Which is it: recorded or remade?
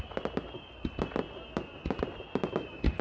recorded